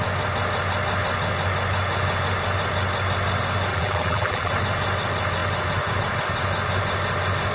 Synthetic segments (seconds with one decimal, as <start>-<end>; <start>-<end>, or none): 3.7-4.5